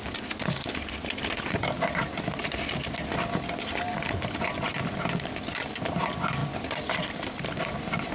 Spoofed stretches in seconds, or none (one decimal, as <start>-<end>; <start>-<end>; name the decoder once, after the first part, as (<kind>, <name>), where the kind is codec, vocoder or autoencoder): 6.4-7.6 (vocoder, BigVGAN v2)